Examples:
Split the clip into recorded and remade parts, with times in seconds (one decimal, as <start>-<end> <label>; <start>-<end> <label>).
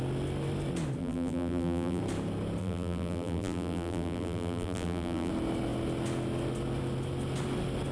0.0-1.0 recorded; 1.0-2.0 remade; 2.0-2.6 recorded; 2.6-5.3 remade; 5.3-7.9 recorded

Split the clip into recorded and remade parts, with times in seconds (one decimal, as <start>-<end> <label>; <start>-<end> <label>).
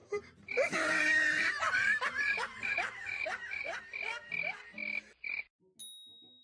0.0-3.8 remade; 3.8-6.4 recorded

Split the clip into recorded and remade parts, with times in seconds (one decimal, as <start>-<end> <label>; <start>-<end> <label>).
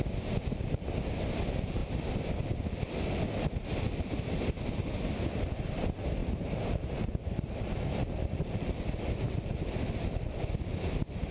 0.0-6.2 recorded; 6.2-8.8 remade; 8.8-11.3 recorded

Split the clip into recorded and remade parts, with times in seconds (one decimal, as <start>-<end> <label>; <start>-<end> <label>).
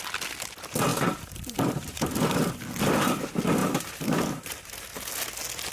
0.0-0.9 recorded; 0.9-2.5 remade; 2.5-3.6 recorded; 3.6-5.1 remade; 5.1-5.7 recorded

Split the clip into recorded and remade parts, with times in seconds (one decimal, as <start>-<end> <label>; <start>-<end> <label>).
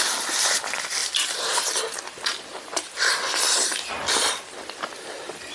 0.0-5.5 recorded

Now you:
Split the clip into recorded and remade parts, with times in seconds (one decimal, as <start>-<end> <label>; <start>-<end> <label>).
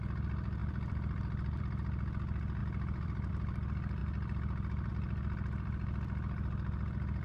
0.0-0.6 recorded; 0.6-1.6 remade; 1.6-2.6 recorded; 2.6-3.3 remade; 3.3-4.0 recorded; 4.0-4.9 remade; 4.9-7.2 recorded